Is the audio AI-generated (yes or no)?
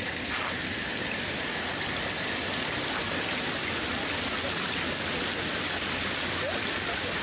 no